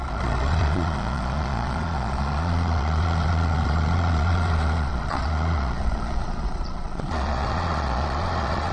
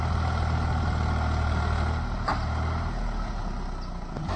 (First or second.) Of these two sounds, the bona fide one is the second